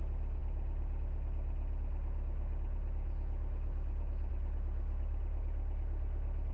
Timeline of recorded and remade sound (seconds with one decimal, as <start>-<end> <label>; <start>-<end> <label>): 0.0-6.5 recorded

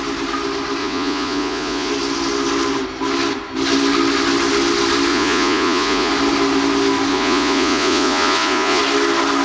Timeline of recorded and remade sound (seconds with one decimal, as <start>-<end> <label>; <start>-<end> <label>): 0.0-0.8 recorded; 0.8-1.9 remade; 1.9-5.1 recorded; 5.1-6.1 remade; 6.1-7.1 recorded; 7.1-8.8 remade; 8.8-9.4 recorded

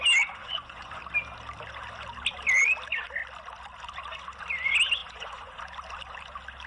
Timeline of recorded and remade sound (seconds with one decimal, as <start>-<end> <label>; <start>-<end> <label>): 0.0-0.4 recorded; 0.4-1.0 remade; 1.0-5.0 recorded; 5.0-5.6 remade; 5.6-6.7 recorded

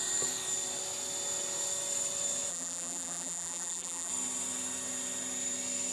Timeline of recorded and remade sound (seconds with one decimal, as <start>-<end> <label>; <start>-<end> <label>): 0.0-2.5 recorded; 2.5-4.1 remade; 4.1-5.9 recorded

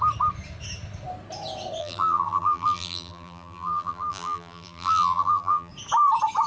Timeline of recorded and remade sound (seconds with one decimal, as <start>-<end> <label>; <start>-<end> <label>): 0.0-1.8 recorded; 1.8-5.7 remade; 5.7-6.5 recorded

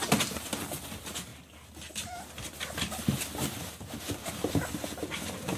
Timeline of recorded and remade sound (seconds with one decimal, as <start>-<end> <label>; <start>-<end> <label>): 0.0-5.6 recorded

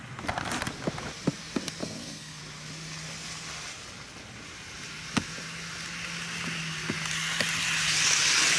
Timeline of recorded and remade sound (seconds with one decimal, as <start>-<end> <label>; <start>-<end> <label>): 0.0-1.8 recorded; 1.8-2.4 remade; 2.4-8.6 recorded